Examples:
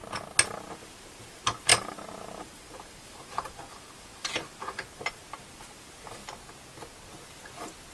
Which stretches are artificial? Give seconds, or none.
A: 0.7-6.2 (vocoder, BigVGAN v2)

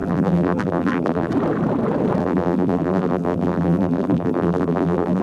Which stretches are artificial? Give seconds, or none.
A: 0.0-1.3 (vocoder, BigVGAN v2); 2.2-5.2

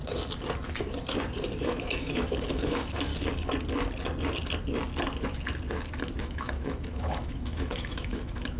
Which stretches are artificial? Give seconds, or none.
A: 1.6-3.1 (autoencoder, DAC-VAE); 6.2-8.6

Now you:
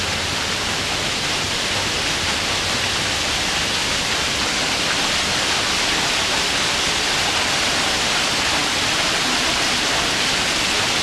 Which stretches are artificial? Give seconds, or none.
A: none

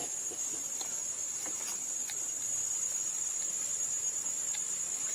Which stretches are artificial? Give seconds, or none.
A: none

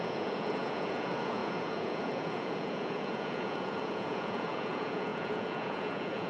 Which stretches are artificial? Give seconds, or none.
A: 0.0-6.3 (vocoder, Vocos)

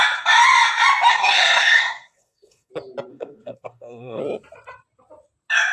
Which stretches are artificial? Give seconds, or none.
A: 1.1-2.7 (codec, SNAC); 3.1-4.2